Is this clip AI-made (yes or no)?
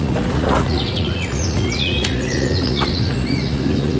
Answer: yes